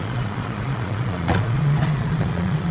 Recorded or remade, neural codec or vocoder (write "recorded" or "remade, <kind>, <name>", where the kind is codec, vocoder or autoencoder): remade, vocoder, Vocos